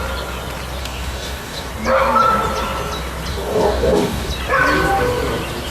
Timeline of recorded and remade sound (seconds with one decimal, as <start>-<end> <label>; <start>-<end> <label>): 0.0-0.8 recorded; 0.8-1.7 remade; 1.7-3.3 recorded; 3.3-4.3 remade; 4.3-5.7 recorded